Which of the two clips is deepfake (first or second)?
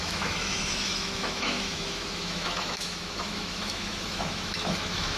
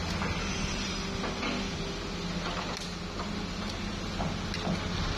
first